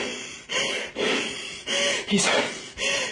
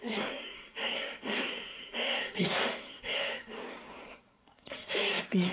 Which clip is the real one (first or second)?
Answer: first